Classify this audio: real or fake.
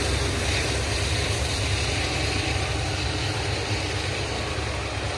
real